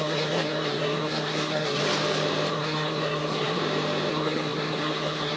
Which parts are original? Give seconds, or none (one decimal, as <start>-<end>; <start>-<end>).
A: 1.8-2.5; 3.6-4.1